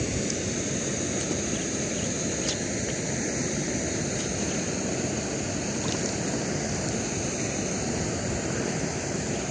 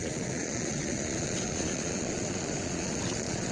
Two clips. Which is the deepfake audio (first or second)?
second